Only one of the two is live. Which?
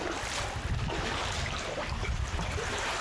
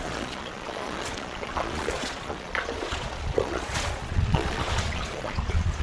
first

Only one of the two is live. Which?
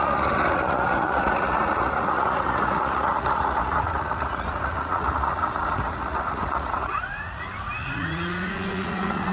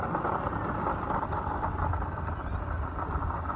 second